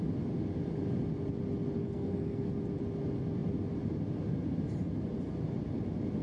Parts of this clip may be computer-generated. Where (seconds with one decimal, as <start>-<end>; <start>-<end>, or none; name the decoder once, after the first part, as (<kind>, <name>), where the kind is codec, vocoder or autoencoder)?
1.8-2.5 (codec, SNAC)